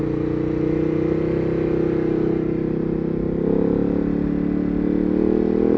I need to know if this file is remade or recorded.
recorded